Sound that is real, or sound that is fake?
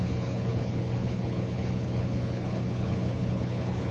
fake